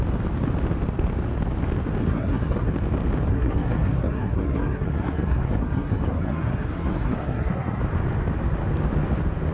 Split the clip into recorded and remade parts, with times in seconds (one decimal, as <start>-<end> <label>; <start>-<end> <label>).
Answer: 0.0-2.0 recorded; 2.0-2.7 remade; 2.7-3.3 recorded; 3.3-7.8 remade; 7.8-9.5 recorded